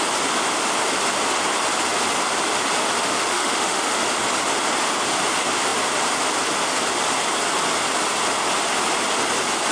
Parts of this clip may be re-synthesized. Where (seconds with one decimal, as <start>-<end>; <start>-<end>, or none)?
3.0-4.1